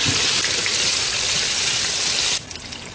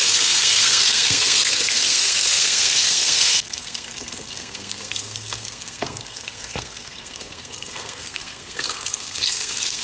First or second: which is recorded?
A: first